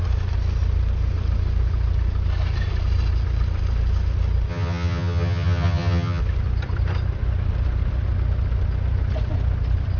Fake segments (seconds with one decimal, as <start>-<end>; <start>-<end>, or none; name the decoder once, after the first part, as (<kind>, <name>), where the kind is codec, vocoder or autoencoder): 4.5-6.2 (vocoder, HiFi-GAN)

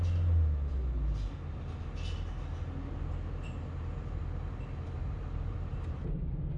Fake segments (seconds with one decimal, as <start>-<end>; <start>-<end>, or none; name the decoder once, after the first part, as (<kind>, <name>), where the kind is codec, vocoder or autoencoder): none

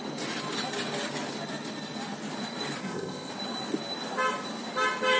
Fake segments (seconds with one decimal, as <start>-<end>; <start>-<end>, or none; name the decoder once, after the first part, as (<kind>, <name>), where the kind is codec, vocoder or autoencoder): 2.8-3.3 (codec, ZipCodec)

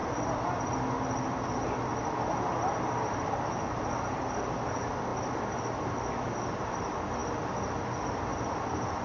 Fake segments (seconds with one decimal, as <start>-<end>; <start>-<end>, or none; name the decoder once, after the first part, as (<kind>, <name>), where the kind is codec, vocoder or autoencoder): none

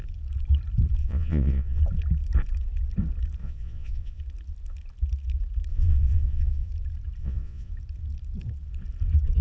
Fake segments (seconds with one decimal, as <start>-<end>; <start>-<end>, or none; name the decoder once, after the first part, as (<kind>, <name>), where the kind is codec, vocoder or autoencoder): 1.0-1.8 (vocoder, Vocos); 3.4-4.2; 5.7-6.7; 7.2-7.7